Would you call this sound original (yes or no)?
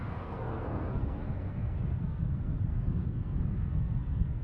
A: no